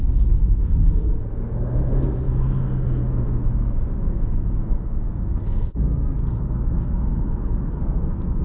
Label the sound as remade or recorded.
remade